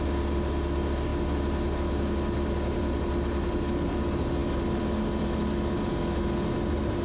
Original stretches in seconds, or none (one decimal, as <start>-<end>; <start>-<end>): 0.0-7.0